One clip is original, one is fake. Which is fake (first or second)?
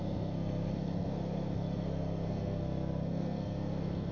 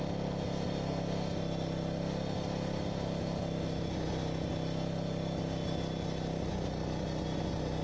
first